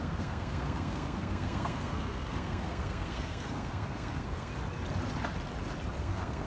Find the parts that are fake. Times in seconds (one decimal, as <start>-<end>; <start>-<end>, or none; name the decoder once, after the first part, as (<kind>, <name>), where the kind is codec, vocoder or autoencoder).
0.0-4.5 (codec, SNAC); 6.0-6.5